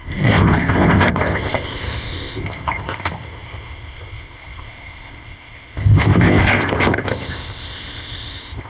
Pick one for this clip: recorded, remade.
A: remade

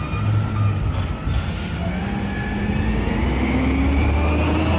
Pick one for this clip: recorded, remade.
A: recorded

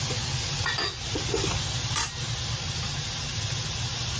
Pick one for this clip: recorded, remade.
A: recorded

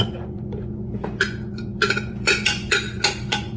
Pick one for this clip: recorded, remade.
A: remade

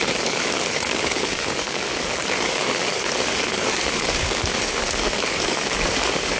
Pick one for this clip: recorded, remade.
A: remade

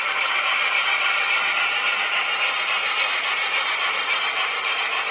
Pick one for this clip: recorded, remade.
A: recorded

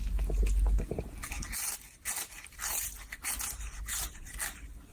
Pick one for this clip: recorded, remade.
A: recorded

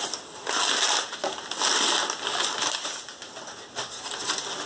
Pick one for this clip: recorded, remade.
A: recorded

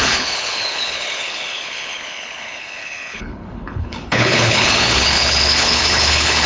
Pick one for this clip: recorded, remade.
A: remade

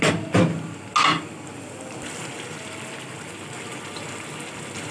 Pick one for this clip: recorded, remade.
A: recorded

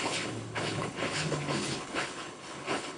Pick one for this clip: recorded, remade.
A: remade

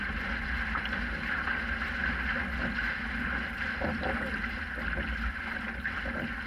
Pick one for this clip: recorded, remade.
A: recorded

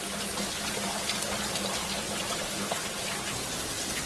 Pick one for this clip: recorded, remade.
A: recorded